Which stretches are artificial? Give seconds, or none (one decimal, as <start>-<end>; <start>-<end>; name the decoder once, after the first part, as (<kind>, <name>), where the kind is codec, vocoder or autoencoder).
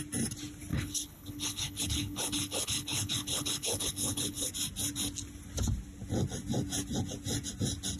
0.7-4.5 (codec, HILCodec)